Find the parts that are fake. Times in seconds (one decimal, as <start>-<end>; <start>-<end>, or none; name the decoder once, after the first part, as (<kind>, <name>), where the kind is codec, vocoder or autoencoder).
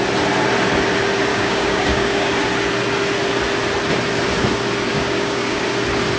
1.3-2.3 (codec, DAC); 4.9-5.6